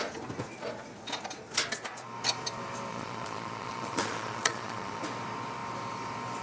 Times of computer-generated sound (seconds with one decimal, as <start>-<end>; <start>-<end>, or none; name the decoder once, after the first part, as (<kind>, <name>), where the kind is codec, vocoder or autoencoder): 2.9-5.0 (vocoder, Vocos)